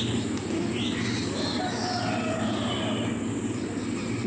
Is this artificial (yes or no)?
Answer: no